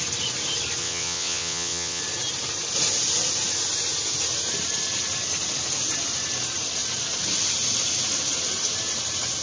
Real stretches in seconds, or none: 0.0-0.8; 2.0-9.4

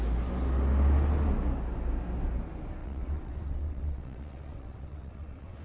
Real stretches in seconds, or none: 0.0-2.8

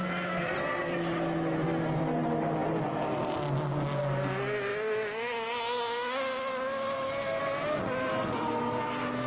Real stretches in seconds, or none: 0.0-9.3